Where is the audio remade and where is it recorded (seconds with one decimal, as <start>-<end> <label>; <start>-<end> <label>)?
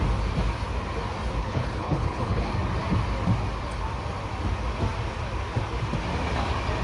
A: 0.0-1.4 recorded; 1.4-2.5 remade; 2.5-6.8 recorded